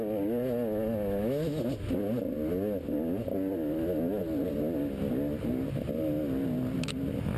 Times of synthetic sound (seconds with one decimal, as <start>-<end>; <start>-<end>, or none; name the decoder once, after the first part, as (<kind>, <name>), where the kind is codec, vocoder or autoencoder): none